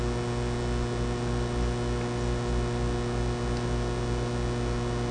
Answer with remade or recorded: recorded